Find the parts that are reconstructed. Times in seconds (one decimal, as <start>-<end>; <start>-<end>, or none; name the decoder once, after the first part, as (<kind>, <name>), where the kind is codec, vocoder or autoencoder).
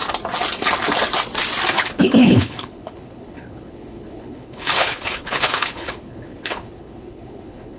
1.7-7.8 (codec, HILCodec)